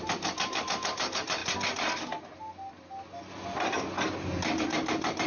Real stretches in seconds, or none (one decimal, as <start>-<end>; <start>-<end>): 1.4-4.6